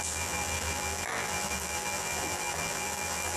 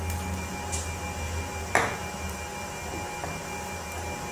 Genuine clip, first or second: second